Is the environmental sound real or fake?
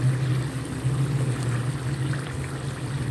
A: real